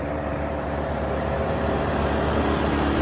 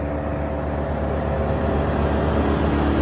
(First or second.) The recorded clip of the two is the second